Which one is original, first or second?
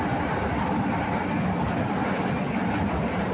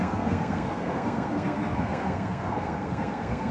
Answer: first